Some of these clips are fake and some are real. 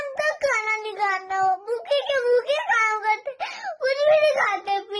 real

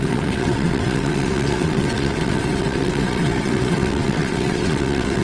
fake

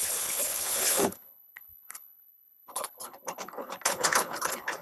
fake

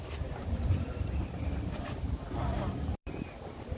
fake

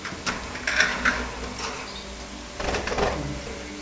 real